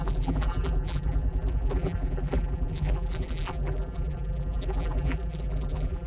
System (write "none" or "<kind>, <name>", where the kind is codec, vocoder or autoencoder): vocoder, BigVGAN v2